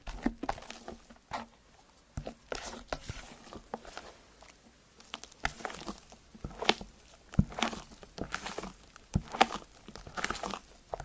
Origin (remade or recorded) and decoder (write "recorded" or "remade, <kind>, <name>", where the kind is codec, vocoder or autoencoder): recorded